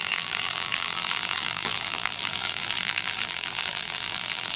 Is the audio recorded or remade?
remade